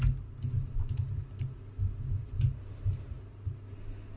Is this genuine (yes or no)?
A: yes